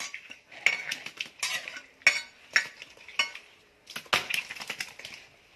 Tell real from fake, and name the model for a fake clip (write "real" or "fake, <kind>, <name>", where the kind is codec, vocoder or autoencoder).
real